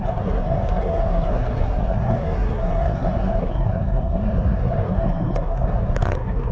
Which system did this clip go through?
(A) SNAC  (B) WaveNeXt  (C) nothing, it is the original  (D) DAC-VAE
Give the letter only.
A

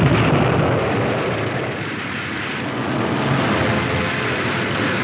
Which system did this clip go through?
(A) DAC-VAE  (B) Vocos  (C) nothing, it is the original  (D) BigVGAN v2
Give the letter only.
C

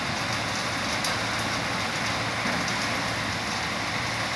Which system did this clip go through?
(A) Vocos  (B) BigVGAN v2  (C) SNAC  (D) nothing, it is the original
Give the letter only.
D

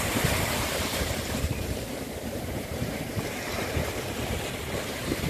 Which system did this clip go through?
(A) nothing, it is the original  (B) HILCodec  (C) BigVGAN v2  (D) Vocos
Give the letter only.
C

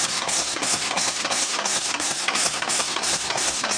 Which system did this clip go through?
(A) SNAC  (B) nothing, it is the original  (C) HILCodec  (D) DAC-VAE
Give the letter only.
A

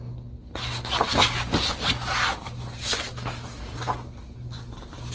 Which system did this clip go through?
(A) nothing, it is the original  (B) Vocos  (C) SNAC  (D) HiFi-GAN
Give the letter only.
A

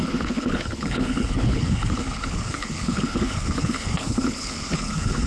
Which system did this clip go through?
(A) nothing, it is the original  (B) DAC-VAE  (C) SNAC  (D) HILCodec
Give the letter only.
D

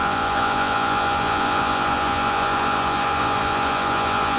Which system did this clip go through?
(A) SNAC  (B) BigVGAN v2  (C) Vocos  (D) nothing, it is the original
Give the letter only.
C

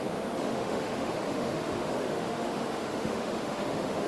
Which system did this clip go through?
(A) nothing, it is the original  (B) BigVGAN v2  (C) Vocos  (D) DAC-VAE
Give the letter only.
D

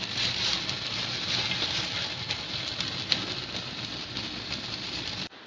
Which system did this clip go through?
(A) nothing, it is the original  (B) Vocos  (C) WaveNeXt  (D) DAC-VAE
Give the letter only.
A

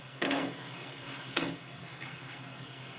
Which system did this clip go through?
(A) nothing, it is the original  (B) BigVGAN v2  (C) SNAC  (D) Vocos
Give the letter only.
C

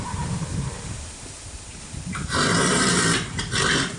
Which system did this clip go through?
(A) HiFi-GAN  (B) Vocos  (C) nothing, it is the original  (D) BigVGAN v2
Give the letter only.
D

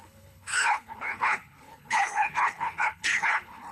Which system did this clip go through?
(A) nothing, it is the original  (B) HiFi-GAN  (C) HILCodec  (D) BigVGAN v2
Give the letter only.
C